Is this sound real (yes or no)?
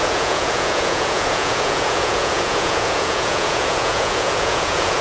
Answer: no